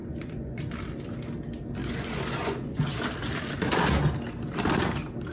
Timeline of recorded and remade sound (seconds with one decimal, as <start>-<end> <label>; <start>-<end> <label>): 0.0-0.6 remade; 0.6-1.8 recorded; 1.8-2.8 remade; 2.8-5.3 recorded